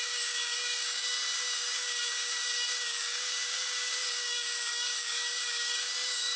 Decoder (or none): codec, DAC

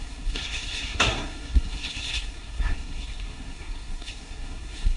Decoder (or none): codec, SNAC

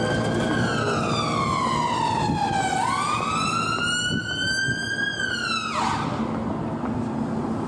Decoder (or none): none